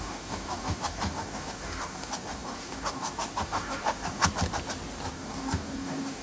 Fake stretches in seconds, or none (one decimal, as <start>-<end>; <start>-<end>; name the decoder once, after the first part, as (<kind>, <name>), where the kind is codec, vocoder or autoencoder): 0.0-4.2 (codec, DAC); 5.1-6.2